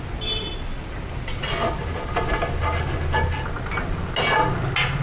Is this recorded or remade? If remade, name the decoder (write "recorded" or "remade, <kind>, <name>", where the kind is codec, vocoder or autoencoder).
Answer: recorded